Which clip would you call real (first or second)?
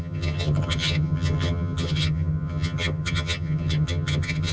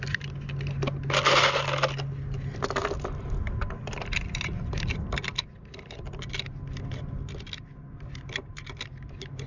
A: second